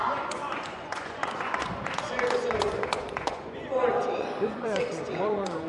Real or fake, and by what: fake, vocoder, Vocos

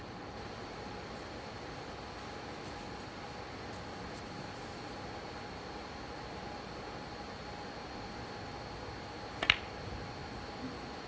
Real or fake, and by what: real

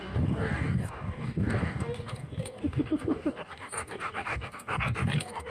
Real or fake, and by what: fake, codec, DAC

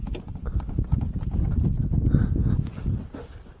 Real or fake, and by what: real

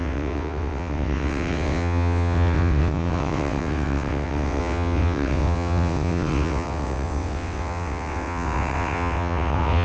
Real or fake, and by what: fake, vocoder, WaveNeXt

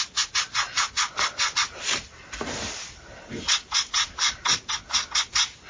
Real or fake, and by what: real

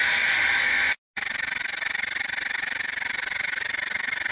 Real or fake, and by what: real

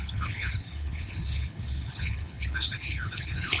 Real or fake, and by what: fake, codec, HILCodec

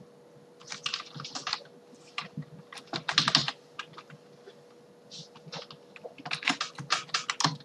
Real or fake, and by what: real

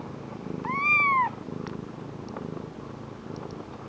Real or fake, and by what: real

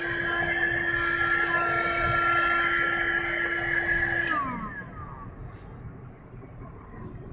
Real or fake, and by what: real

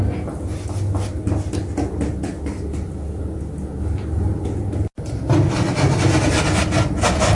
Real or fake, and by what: real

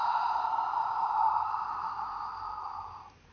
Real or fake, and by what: real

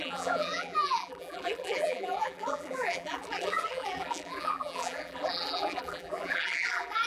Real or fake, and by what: fake, vocoder, BigVGAN v2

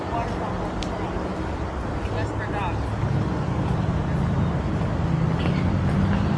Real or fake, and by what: real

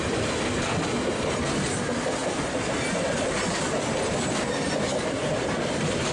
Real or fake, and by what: real